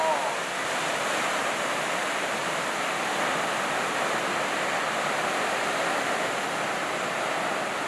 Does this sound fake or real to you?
fake